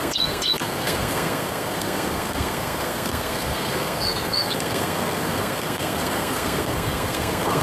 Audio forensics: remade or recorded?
remade